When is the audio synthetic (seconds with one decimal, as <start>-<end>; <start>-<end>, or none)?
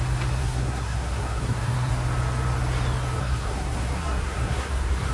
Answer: 0.4-1.9; 3.2-5.1